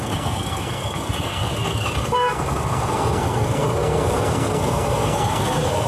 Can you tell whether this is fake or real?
fake